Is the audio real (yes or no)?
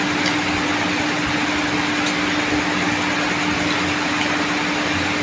yes